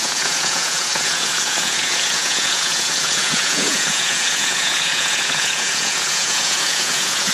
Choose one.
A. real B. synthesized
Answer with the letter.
B